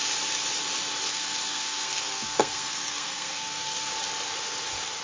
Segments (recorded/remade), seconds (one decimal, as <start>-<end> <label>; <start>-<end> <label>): 0.0-1.1 recorded; 1.1-3.9 remade; 3.9-5.0 recorded